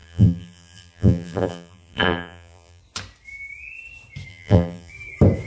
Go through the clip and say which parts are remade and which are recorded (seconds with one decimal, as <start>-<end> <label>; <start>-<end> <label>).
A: 0.0-2.8 remade; 2.8-4.3 recorded; 4.3-4.9 remade; 4.9-5.5 recorded